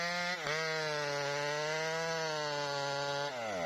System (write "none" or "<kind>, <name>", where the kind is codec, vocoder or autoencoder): none